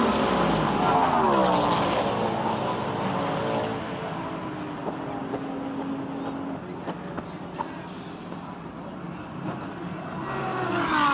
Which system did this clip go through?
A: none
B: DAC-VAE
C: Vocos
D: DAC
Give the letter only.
A